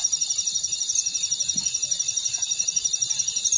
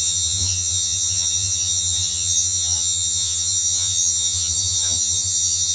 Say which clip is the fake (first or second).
second